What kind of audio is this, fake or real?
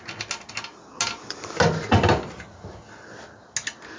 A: real